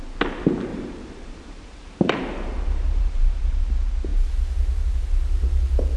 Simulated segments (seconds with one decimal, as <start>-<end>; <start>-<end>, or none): 0.7-3.6